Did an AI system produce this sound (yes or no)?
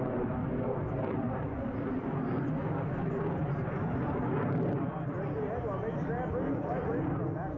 no